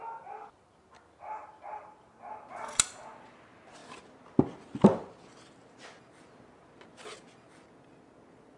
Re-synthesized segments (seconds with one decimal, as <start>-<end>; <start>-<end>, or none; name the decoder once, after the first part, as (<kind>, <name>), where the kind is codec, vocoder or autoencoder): none